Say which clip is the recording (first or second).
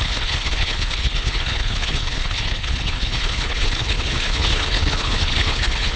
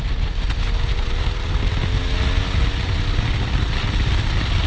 second